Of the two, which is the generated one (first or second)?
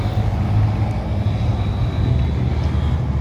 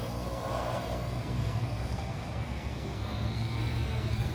second